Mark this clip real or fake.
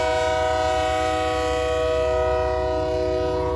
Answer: real